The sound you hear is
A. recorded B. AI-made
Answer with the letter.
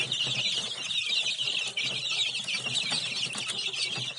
A